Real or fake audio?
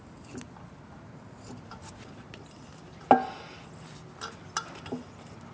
real